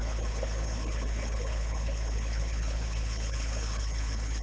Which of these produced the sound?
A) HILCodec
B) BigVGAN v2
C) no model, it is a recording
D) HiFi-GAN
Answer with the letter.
A